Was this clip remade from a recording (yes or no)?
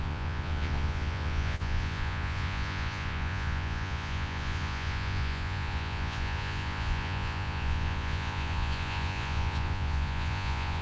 yes